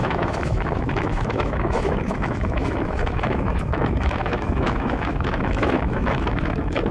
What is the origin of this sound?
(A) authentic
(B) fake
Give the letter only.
B